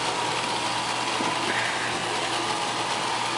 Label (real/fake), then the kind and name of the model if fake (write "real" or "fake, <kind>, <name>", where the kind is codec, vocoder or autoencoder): real